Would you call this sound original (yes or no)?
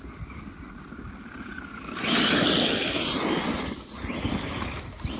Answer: yes